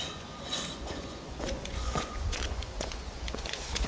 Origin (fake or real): fake